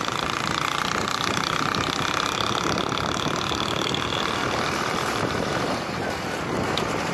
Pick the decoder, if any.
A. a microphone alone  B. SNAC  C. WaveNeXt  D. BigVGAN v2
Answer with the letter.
D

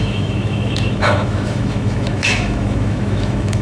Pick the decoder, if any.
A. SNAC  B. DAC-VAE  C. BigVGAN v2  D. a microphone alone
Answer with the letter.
B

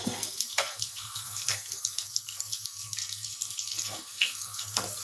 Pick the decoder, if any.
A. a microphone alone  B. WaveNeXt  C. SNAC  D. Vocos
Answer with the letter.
C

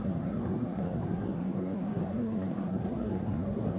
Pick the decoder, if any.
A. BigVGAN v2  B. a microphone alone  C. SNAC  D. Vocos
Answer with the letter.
C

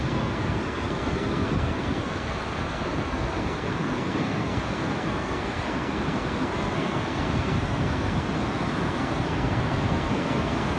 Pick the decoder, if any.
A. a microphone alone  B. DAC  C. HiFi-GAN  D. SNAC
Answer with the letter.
D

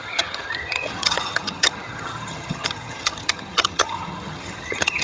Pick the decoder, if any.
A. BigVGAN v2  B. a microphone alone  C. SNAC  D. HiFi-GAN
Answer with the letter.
D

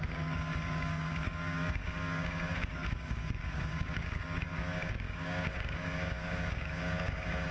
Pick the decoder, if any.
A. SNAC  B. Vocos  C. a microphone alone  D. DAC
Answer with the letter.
D